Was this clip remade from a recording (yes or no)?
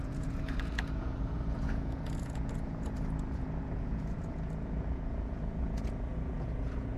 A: yes